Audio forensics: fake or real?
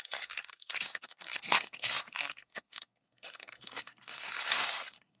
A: fake